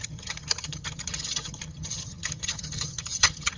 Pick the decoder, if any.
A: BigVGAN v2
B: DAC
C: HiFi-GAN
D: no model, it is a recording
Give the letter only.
C